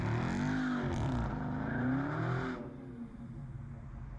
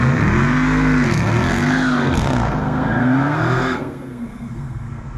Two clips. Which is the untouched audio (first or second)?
first